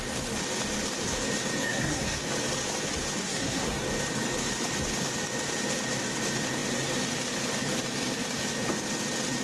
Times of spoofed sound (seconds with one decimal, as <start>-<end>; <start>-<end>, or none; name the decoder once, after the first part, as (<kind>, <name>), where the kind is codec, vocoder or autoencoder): 1.6-2.2 (codec, SNAC); 3.2-3.8